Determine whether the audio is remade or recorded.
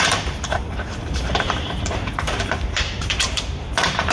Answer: remade